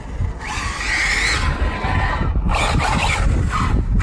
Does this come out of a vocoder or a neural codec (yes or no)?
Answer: no